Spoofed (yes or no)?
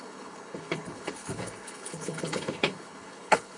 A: yes